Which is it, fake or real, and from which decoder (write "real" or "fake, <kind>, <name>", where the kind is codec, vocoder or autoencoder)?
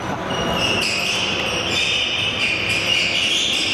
real